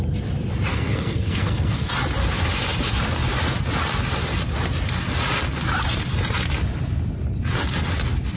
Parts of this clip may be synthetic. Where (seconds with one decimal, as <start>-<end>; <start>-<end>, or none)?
0.7-1.9